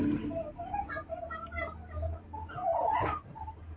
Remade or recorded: recorded